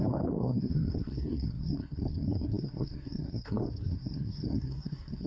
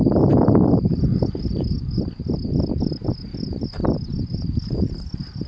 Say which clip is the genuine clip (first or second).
second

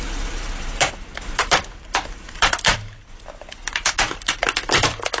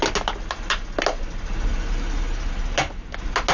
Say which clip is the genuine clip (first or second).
second